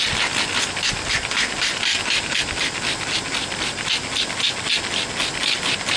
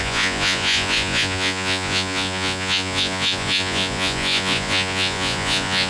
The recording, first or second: first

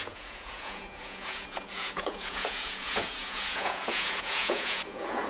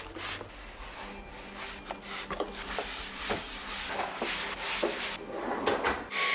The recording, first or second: second